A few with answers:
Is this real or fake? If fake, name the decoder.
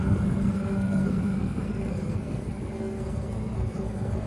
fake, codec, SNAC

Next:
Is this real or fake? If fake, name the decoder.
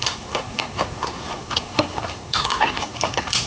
fake, codec, SNAC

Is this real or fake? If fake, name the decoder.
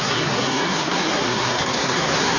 fake, codec, SNAC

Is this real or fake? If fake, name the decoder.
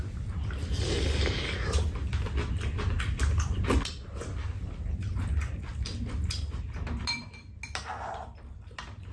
real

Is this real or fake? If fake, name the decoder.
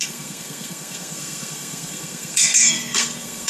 fake, codec, SNAC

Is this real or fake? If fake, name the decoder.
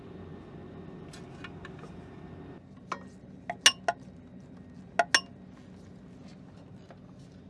real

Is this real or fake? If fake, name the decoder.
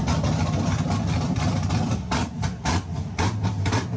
real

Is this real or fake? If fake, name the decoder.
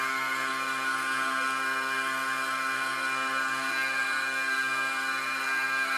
fake, codec, SNAC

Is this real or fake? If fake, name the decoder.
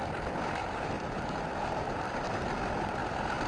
real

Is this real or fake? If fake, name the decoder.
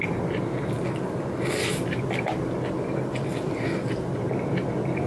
real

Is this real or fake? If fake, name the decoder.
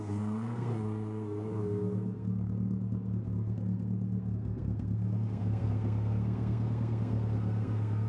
fake, codec, SNAC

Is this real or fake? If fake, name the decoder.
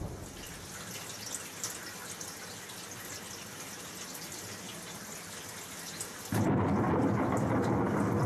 real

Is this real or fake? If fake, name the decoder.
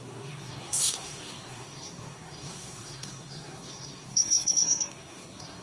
fake, codec, SNAC